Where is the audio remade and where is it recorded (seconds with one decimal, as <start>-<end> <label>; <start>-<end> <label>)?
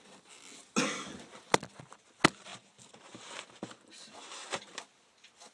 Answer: 0.0-5.5 recorded